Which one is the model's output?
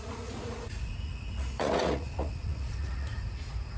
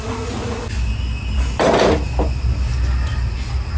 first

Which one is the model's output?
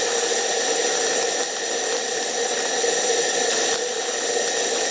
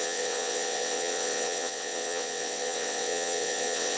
second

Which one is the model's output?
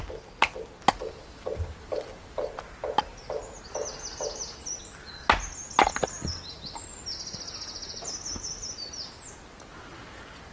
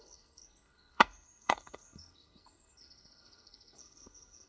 second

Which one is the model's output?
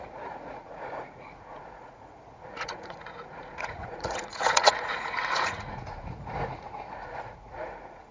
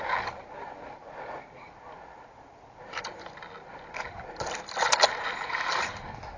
first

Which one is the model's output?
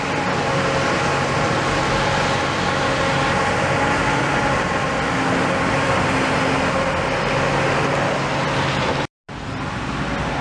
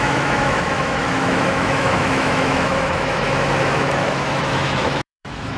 second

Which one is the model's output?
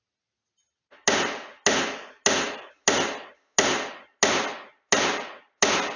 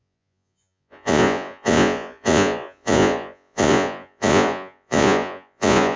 second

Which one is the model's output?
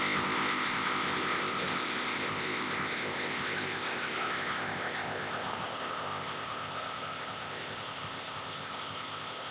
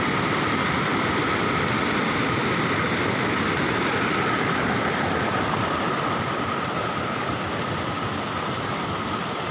first